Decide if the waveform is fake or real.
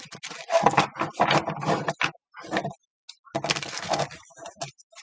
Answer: real